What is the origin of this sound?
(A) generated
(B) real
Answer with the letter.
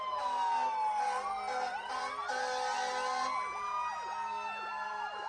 B